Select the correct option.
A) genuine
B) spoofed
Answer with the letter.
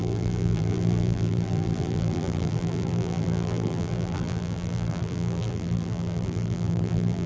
B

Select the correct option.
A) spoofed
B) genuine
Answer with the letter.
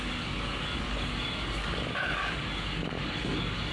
A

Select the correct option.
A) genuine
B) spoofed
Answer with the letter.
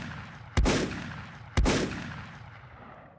A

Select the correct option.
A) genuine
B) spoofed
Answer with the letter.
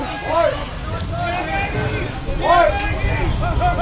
A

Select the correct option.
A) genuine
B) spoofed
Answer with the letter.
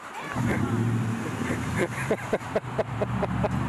B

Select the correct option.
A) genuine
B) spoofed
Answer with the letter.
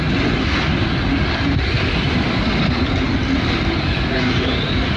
A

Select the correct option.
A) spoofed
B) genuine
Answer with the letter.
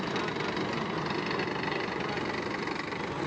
B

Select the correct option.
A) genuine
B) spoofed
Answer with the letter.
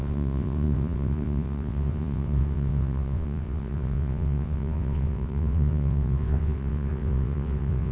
B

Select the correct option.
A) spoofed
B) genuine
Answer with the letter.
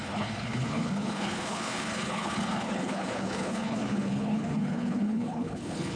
A